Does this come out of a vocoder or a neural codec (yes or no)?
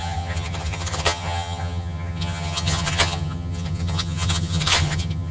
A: yes